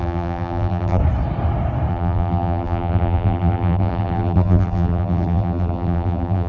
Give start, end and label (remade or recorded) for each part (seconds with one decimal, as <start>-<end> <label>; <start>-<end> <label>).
0.0-1.0 remade; 1.0-1.9 recorded; 1.9-6.5 remade